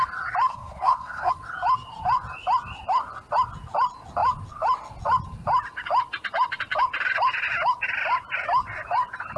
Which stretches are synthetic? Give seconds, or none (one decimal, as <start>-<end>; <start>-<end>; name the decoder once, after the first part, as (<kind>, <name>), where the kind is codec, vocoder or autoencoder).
0.5-1.3 (codec, SNAC)